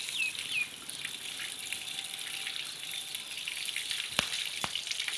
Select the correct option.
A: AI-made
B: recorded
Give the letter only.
B